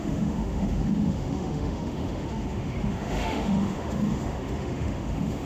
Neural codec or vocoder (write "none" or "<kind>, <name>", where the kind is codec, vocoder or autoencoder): autoencoder, DAC-VAE